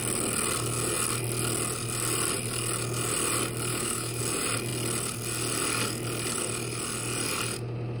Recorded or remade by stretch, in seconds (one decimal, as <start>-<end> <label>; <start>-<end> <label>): 0.0-3.7 recorded; 3.7-4.2 remade; 4.2-8.0 recorded